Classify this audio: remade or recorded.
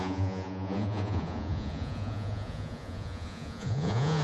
remade